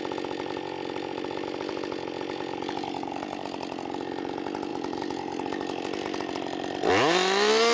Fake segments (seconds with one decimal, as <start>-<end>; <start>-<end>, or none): none